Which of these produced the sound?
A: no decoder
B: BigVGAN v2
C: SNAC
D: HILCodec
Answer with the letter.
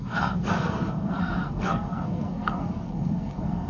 C